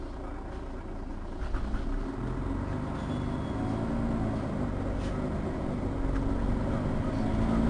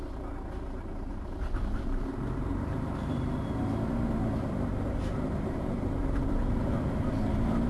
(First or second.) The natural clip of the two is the first